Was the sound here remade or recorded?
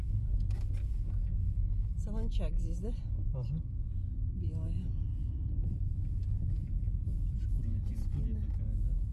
recorded